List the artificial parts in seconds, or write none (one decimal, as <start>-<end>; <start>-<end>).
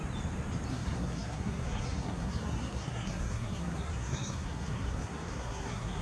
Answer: 0.7-6.0